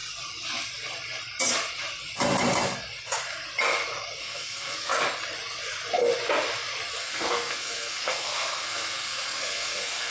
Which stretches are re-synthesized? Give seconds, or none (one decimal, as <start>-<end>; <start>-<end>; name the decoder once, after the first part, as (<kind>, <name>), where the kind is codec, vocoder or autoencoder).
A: 4.2-4.9 (codec, SNAC); 7.0-10.1